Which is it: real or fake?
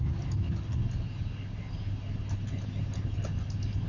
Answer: real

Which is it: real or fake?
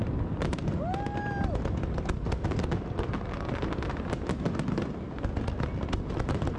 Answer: real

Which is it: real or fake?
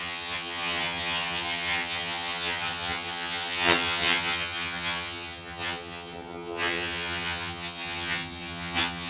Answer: fake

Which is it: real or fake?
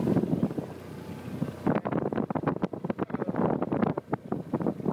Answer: real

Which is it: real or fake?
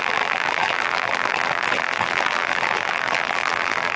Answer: fake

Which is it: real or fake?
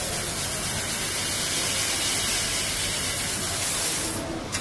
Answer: real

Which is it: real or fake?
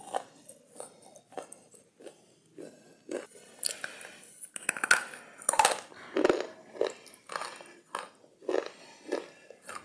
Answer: real